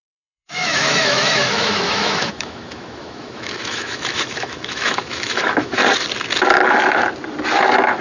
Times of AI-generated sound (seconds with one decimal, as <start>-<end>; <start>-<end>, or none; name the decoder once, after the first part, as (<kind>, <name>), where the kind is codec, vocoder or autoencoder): 0.0-5.8 (autoencoder, DAC-VAE)